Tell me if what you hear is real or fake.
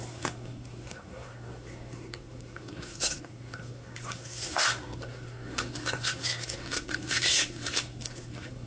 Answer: fake